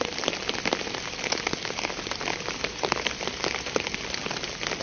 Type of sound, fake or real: real